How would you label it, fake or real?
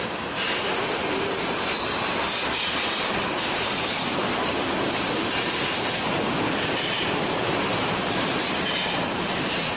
fake